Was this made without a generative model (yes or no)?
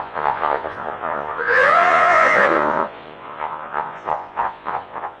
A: no